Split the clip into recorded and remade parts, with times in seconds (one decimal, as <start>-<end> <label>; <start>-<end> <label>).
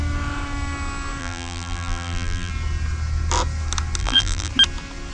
0.0-1.2 recorded; 1.2-2.5 remade; 2.5-4.0 recorded; 4.0-4.5 remade; 4.5-5.1 recorded